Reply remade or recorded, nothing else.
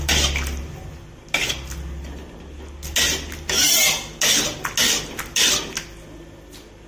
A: recorded